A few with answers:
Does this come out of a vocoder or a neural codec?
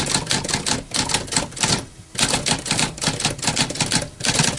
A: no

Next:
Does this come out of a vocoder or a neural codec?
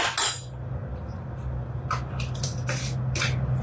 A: no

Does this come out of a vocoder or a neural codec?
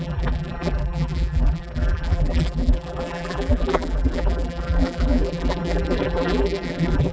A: yes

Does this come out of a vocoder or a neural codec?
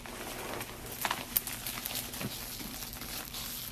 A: no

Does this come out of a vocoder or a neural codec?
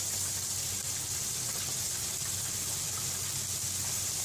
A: no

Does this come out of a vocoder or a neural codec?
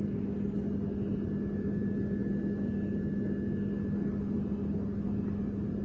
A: no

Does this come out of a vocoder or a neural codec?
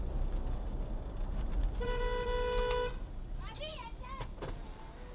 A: no